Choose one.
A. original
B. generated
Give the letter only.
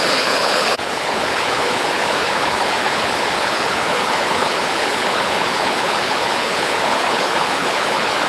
B